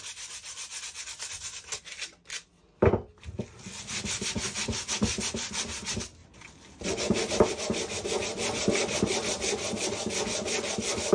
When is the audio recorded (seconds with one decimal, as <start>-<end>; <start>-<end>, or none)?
0.0-11.1